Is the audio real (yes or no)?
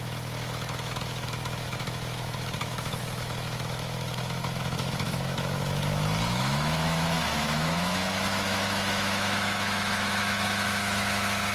no